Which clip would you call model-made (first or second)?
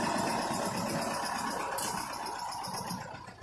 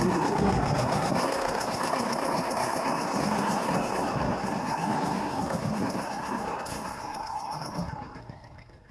second